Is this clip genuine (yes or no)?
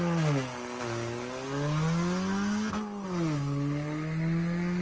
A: yes